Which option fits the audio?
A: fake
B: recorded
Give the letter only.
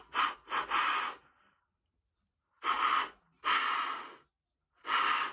B